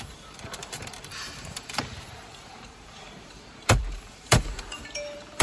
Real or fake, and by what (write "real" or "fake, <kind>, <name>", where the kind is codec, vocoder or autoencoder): fake, vocoder, BigVGAN v2